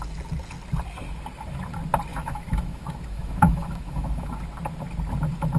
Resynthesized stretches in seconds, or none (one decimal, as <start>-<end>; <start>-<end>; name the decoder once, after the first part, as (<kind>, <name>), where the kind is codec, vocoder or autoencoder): 2.1-4.3 (autoencoder, DAC-VAE)